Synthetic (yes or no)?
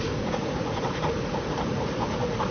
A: yes